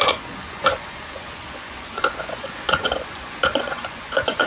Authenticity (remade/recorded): remade